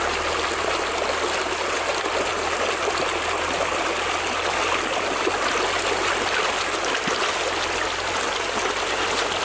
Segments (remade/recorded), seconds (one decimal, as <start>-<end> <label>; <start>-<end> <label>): 0.0-9.4 recorded